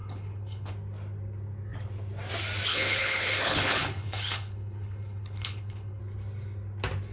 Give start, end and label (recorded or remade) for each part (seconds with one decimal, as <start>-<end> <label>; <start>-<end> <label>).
0.0-0.7 remade; 0.7-2.7 recorded; 2.7-6.0 remade; 6.0-7.1 recorded